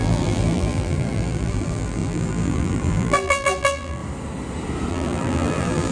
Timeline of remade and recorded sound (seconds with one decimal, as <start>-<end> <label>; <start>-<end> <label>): 0.0-4.0 remade; 4.0-4.9 recorded; 4.9-5.9 remade